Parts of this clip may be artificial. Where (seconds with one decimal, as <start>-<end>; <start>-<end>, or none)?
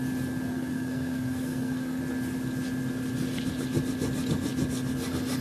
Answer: 0.5-2.0